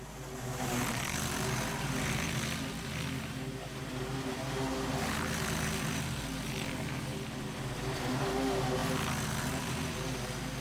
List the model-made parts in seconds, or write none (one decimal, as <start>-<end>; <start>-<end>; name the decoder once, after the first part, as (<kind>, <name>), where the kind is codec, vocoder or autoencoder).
none